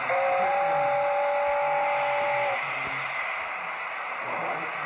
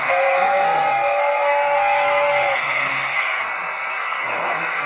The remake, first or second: second